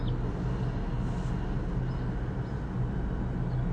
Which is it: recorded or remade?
recorded